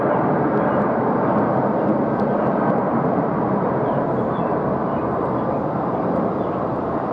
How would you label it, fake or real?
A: fake